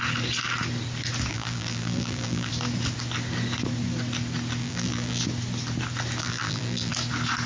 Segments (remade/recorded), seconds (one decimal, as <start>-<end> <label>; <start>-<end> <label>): 0.0-1.3 recorded; 1.3-2.5 remade; 2.5-4.6 recorded; 4.6-5.2 remade; 5.2-6.2 recorded; 6.2-6.9 remade; 6.9-7.5 recorded

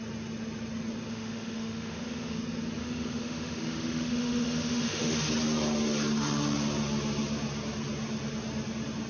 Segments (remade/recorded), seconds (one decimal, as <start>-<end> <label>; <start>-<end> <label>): 0.0-1.1 recorded; 1.1-2.4 remade; 2.4-2.8 recorded; 2.8-5.3 remade; 5.3-9.1 recorded

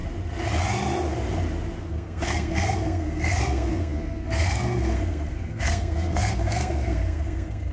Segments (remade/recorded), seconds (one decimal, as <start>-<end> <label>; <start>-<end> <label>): 0.0-1.8 recorded; 1.8-7.7 remade

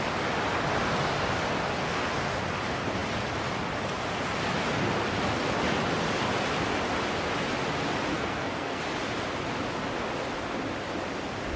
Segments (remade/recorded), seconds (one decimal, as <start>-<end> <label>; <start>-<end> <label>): 0.0-8.1 recorded; 8.1-8.8 remade; 8.8-11.6 recorded